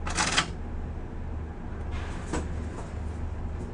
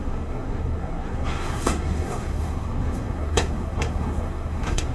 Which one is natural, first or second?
first